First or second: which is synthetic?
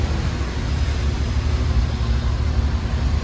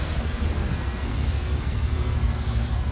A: second